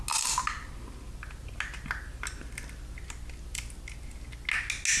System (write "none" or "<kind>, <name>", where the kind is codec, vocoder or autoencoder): none